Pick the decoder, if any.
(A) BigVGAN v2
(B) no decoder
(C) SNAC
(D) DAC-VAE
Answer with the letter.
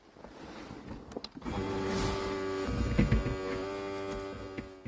B